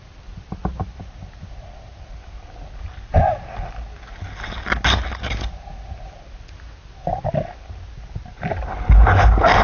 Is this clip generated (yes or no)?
no